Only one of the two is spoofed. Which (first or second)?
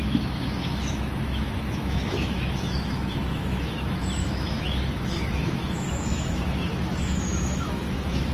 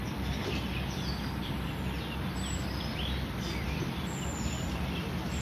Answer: first